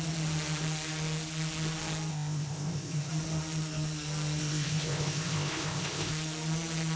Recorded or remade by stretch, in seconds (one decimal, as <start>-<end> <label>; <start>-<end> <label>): 0.0-2.1 recorded; 2.1-3.1 remade; 3.1-4.4 recorded; 4.4-6.1 remade; 6.1-7.0 recorded